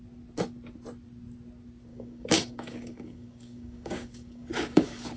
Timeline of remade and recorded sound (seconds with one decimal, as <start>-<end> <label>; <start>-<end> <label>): 0.0-1.9 recorded; 1.9-5.2 remade